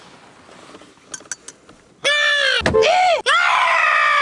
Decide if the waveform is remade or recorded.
recorded